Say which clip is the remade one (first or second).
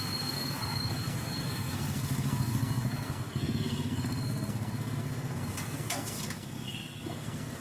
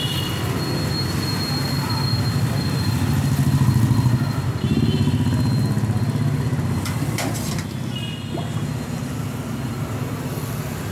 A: first